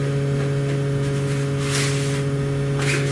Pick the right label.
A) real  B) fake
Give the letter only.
A